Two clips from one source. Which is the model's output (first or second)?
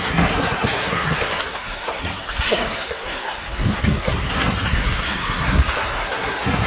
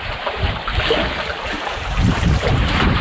first